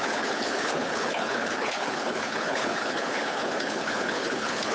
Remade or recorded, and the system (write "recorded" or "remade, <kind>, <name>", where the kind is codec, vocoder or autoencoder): remade, codec, HILCodec